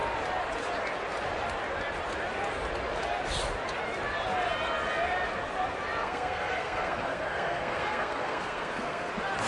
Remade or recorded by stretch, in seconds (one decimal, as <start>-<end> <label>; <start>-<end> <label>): 0.0-6.0 recorded; 6.0-9.1 remade; 9.1-9.5 recorded